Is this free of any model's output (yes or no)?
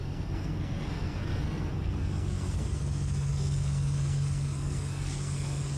no